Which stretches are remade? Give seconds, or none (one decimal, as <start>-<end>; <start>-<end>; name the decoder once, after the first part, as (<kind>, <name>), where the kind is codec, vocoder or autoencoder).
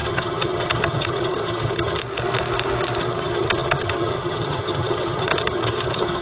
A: 0.0-2.0 (vocoder, HiFi-GAN); 3.0-6.2